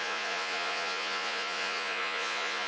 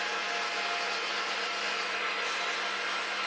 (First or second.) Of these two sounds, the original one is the second